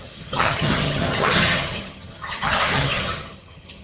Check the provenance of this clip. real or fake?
fake